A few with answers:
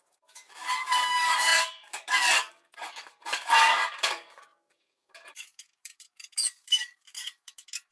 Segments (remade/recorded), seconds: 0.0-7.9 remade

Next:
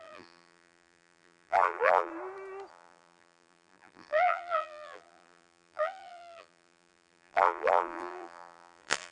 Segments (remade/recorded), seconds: 0.0-2.1 remade; 2.1-2.7 recorded; 2.7-9.1 remade

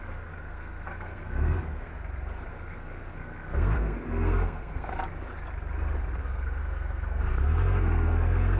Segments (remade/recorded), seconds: 0.0-1.9 remade; 1.9-2.5 recorded; 2.5-4.9 remade; 4.9-6.2 recorded; 6.2-8.6 remade

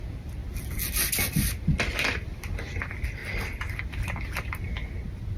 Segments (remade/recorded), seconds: 0.0-5.4 recorded